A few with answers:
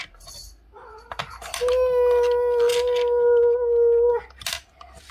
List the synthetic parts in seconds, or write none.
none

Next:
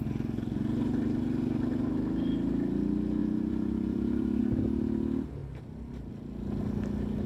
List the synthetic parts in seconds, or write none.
3.2-4.4 (vocoder, BigVGAN v2)